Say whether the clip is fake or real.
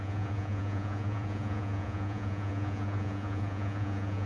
fake